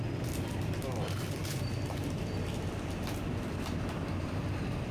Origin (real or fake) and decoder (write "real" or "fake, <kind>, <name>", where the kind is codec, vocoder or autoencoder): fake, vocoder, BigVGAN v2